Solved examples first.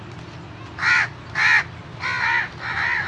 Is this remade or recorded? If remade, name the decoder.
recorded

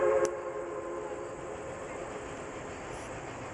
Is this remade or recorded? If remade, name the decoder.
recorded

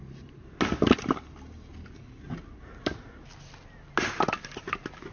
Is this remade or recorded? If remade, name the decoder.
recorded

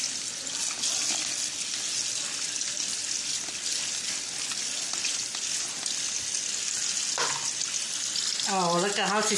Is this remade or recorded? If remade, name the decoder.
recorded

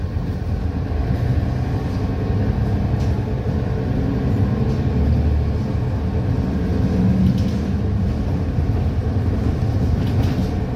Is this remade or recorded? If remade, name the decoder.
recorded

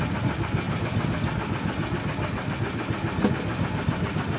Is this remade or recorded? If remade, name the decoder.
recorded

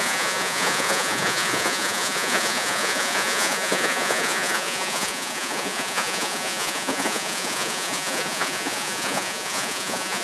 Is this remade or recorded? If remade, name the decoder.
remade, vocoder, Vocos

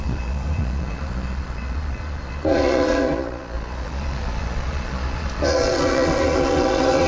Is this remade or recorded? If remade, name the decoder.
remade, vocoder, Vocos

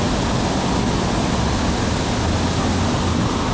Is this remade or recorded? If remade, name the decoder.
recorded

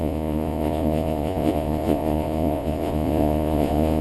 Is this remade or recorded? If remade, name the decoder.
remade, vocoder, Vocos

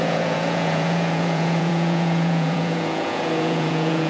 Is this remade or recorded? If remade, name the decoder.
remade, vocoder, Vocos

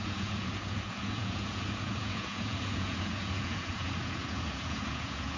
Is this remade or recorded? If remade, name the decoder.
remade, vocoder, Vocos